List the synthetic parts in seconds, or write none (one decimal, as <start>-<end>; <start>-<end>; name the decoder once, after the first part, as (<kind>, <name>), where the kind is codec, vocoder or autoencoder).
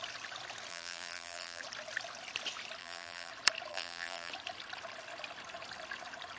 0.7-1.6 (vocoder, BigVGAN v2); 2.8-3.3; 3.7-4.3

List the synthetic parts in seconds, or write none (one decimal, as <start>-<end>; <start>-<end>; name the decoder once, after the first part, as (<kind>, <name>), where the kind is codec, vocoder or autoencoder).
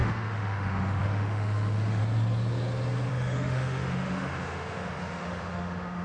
0.0-2.0 (autoencoder, DAC-VAE); 3.1-6.0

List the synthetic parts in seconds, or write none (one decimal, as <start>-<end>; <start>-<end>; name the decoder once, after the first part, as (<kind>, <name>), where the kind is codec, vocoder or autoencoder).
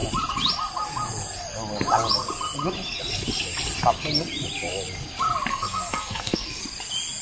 5.5-6.6 (codec, SNAC)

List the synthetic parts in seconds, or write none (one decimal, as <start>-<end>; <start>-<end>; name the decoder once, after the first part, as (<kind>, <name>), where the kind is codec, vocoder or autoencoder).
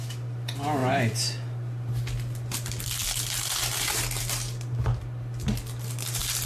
none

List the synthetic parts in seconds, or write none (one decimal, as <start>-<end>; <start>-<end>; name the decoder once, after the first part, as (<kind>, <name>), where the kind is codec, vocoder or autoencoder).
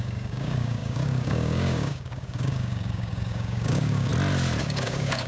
0.0-4.1 (codec, DAC); 4.6-5.3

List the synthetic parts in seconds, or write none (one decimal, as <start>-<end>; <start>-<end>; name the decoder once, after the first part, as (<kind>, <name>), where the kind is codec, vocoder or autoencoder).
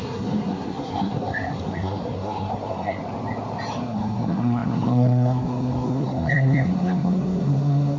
0.0-3.0 (codec, SNAC); 3.8-8.0